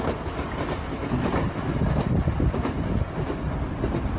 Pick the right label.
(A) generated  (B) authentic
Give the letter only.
B